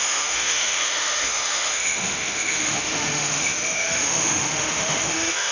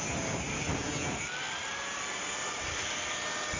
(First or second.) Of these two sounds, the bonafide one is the second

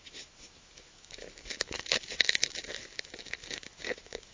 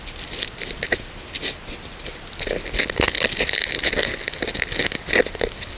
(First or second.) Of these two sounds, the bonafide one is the second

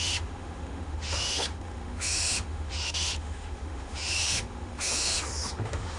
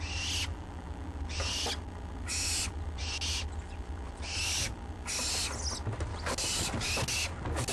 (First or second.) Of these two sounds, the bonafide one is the second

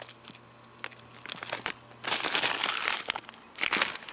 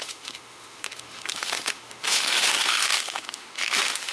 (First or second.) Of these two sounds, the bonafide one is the first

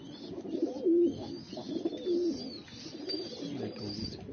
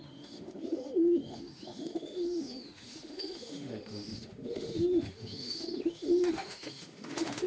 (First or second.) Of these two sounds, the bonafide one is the first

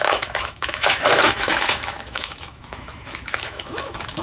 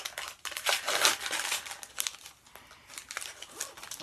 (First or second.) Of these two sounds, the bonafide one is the second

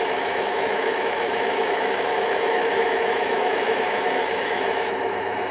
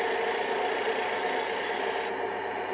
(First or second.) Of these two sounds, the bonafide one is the second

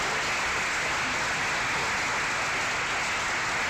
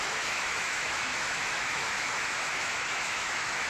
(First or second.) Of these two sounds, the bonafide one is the first